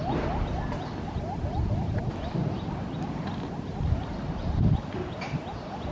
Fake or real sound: real